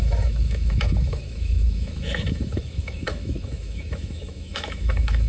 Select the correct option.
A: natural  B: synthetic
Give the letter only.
B